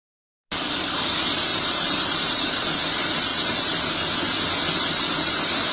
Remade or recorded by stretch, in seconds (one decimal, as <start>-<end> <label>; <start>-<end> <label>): 0.0-1.5 recorded; 1.5-2.8 remade; 2.8-3.3 recorded; 3.3-3.8 remade; 3.8-5.7 recorded